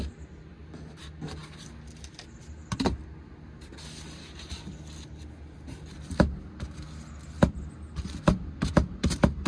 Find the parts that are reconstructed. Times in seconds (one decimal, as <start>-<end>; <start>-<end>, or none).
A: none